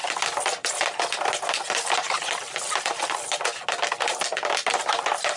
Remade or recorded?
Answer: recorded